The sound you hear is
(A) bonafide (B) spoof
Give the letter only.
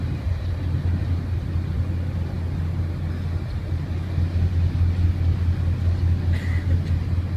A